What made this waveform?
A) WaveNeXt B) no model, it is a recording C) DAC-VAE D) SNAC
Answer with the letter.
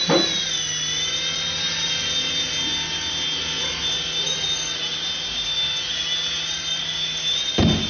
B